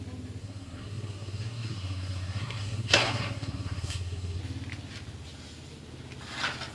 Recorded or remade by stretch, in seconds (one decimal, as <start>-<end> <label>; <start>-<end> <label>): 0.0-0.4 recorded; 0.4-4.4 remade; 4.4-6.7 recorded